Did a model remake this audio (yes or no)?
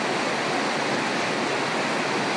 no